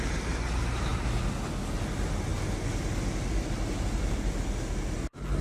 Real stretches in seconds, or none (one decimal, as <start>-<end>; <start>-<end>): 0.0-5.4